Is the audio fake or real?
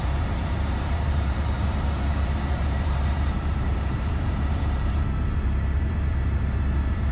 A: fake